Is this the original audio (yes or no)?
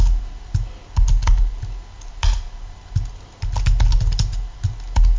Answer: yes